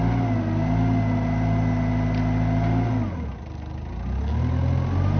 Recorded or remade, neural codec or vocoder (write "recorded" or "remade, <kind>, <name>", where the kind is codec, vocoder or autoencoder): recorded